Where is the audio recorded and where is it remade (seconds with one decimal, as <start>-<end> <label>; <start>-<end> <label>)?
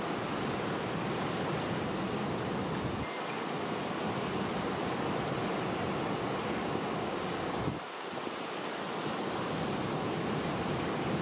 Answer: 0.0-6.6 recorded; 6.6-7.6 remade; 7.6-11.2 recorded